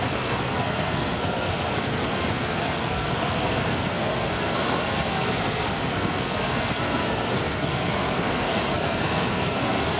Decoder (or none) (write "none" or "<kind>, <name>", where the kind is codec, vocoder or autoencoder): codec, SNAC